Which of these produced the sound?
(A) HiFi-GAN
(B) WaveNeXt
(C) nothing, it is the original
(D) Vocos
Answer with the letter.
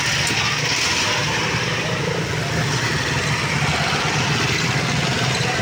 C